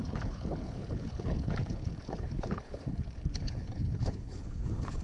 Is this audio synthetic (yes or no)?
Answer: yes